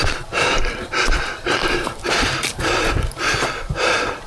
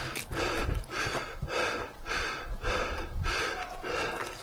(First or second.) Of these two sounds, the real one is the second